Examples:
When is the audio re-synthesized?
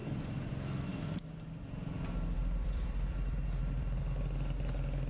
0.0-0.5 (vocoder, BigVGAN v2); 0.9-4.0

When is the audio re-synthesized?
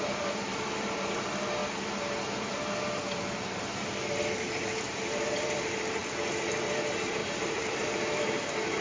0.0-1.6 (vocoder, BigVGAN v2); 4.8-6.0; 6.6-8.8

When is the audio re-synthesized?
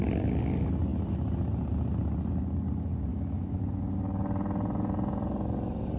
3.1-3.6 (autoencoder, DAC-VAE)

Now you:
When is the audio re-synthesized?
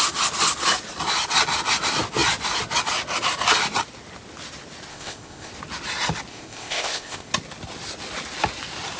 4.9-5.5 (codec, ZipCodec); 6.3-7.3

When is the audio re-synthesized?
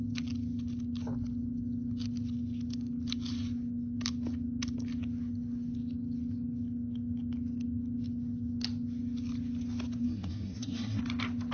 10.0-11.0 (codec, SNAC)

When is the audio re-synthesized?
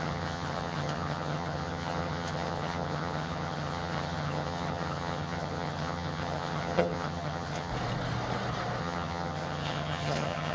0.0-7.7 (vocoder, HiFi-GAN); 8.8-10.5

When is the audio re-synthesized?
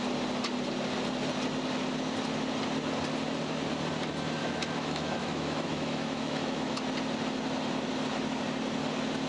4.4-6.8 (autoencoder, DAC-VAE)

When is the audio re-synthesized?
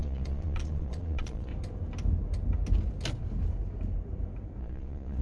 0.0-1.5 (vocoder, Vocos); 4.6-5.2